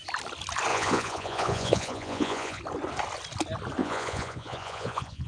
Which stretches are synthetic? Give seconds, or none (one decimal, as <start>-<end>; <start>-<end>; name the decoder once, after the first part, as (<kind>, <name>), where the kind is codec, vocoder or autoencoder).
0.7-2.6 (vocoder, Vocos); 3.8-5.3